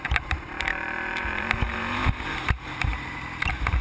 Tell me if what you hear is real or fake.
fake